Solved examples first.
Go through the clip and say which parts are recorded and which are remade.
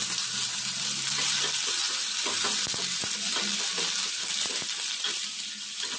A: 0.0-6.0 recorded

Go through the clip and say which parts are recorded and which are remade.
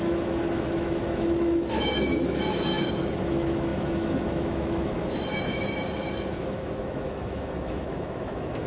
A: 0.0-8.7 remade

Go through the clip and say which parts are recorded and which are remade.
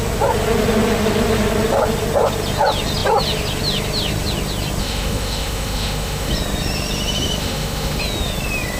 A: 0.0-4.8 recorded; 4.8-6.3 remade; 6.3-7.4 recorded; 7.4-8.0 remade; 8.0-8.8 recorded